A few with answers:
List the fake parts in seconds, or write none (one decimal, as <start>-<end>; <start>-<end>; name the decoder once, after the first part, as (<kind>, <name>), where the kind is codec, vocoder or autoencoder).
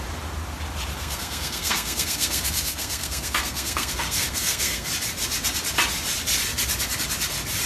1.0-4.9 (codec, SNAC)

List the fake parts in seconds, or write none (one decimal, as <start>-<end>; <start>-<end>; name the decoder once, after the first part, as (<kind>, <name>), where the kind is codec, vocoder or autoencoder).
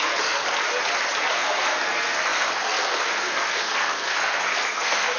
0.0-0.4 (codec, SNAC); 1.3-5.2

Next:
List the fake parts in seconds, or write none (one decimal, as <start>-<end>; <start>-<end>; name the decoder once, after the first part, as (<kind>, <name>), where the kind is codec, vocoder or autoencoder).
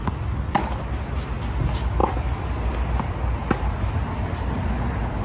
none